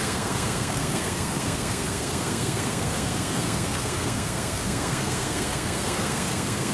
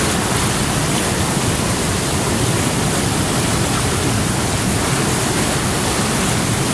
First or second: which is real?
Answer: second